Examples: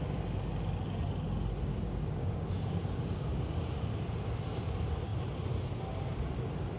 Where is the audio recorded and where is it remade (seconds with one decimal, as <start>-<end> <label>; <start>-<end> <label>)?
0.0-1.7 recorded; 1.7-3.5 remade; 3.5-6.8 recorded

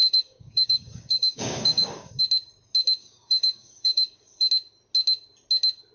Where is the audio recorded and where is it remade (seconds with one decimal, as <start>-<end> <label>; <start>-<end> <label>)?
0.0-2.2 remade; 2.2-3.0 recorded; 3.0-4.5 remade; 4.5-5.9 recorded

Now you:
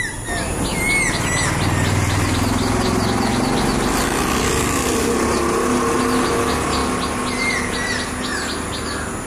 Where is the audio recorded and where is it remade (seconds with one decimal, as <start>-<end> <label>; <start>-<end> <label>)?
0.0-9.3 recorded

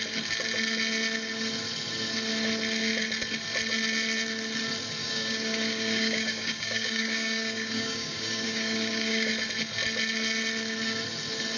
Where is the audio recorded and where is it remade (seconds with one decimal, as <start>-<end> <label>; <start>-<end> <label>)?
0.0-5.0 recorded; 5.0-9.3 remade; 9.3-11.6 recorded

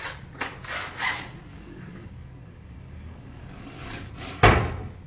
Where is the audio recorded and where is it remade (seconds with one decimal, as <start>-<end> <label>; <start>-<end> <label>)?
0.0-1.5 recorded; 1.5-4.1 remade; 4.1-5.1 recorded

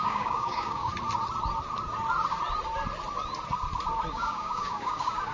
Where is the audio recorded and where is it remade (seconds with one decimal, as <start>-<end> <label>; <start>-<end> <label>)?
0.0-0.9 remade; 0.9-4.1 recorded; 4.1-5.3 remade

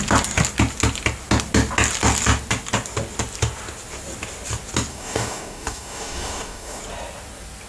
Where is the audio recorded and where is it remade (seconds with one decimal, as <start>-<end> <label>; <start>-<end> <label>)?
0.0-4.9 recorded; 4.9-6.8 remade; 6.8-7.7 recorded

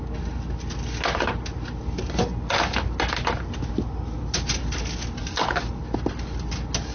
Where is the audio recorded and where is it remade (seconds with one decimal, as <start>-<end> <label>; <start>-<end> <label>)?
0.0-5.2 recorded; 5.2-5.8 remade; 5.8-6.9 recorded